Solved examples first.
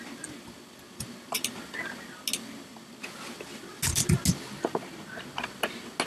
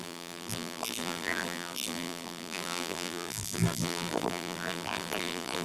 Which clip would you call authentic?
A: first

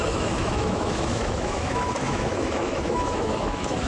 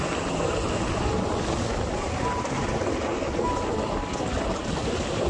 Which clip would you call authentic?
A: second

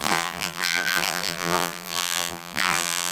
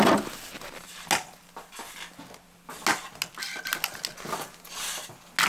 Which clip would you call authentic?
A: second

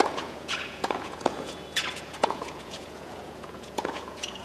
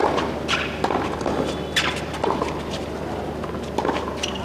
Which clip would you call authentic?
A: second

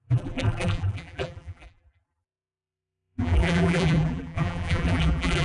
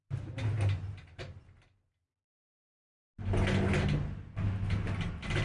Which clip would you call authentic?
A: second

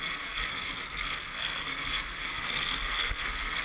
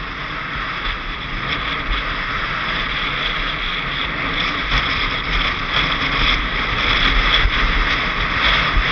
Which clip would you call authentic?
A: second